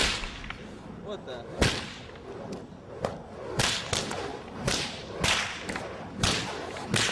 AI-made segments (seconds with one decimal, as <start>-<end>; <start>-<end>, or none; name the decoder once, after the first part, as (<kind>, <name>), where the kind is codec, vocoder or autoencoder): 4.3-5.6 (vocoder, BigVGAN v2)